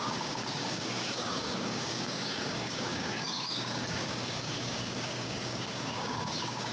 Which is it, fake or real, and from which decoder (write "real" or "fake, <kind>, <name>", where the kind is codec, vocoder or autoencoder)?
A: fake, codec, DAC